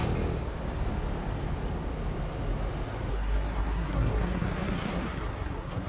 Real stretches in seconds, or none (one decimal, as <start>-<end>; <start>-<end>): 0.0-3.1